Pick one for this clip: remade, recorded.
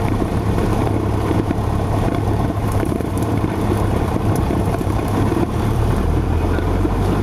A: remade